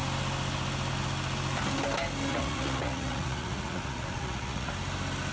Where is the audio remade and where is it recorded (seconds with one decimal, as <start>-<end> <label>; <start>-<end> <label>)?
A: 0.0-2.3 recorded; 2.3-4.7 remade; 4.7-5.3 recorded